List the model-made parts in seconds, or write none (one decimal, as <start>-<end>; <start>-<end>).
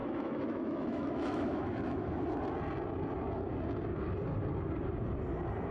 0.0-2.2